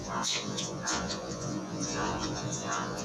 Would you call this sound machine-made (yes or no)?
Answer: yes